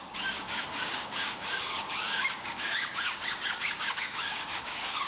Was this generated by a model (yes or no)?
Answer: yes